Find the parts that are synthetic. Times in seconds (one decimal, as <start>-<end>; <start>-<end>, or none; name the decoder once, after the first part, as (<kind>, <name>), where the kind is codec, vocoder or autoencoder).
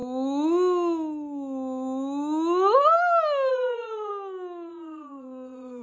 3.5-4.1 (vocoder, Vocos); 4.7-5.8